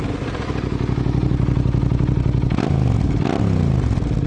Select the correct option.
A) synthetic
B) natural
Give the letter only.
B